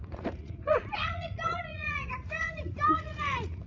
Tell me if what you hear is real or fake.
fake